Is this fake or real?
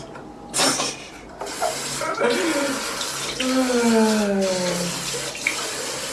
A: real